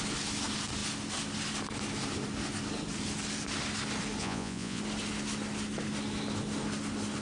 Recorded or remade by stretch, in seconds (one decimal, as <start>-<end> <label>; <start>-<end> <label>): 0.0-4.2 recorded; 4.2-4.8 remade; 4.8-7.2 recorded